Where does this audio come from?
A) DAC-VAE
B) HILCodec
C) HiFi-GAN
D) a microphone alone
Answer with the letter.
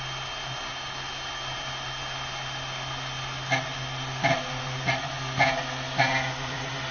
D